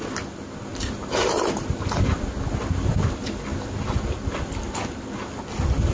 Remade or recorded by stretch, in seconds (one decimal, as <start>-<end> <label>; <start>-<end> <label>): 0.0-0.7 recorded; 0.7-2.0 remade; 2.0-5.9 recorded